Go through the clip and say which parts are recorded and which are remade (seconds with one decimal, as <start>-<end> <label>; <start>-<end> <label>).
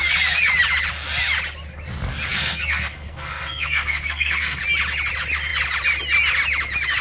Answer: 0.0-2.3 recorded; 2.3-4.6 remade; 4.6-7.0 recorded